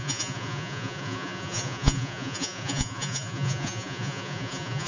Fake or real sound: fake